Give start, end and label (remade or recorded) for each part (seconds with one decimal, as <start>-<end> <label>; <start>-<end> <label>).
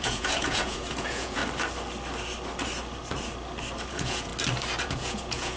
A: 0.0-1.4 remade; 1.4-3.9 recorded; 3.9-4.3 remade; 4.3-4.8 recorded; 4.8-5.6 remade